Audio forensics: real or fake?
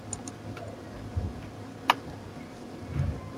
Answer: real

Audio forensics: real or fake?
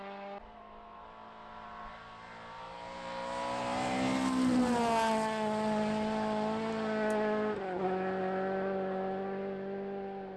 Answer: real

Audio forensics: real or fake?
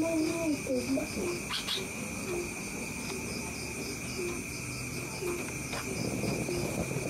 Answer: real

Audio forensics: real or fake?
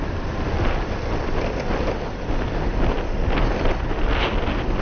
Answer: real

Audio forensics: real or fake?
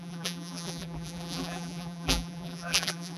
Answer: fake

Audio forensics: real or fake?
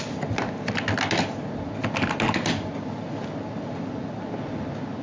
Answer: real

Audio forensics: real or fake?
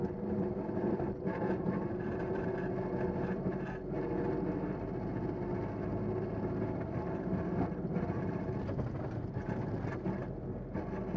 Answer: real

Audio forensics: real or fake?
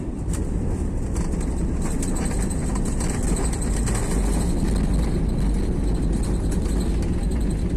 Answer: real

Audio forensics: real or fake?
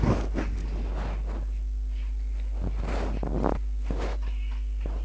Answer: real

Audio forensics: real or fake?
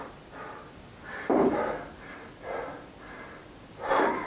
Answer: real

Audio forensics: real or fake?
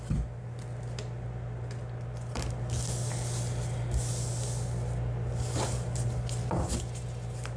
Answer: real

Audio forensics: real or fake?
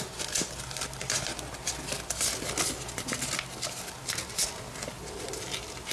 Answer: real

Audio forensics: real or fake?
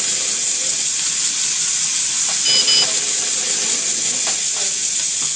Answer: real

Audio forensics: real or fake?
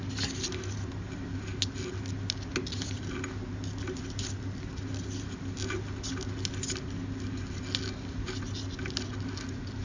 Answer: real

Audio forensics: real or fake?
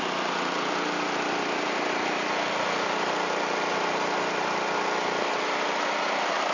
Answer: real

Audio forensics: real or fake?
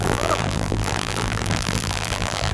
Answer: fake